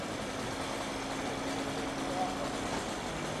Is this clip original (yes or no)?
yes